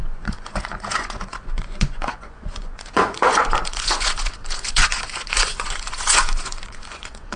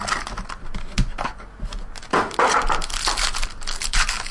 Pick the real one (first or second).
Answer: second